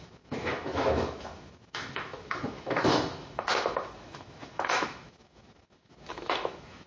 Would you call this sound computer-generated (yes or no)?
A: yes